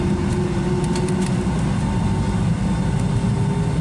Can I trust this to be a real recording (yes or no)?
yes